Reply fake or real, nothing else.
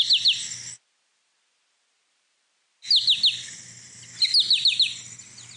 real